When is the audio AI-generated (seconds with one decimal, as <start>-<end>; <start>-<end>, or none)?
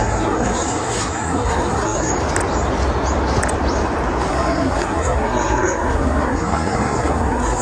0.0-2.1; 4.3-7.6